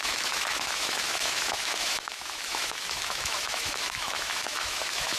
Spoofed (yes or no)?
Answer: yes